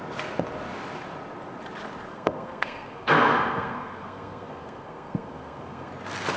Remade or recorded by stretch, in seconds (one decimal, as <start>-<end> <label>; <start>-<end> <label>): 0.0-2.1 recorded; 2.1-5.9 remade; 5.9-6.4 recorded